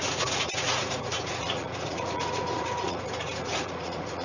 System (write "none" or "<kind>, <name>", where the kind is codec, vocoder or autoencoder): vocoder, Vocos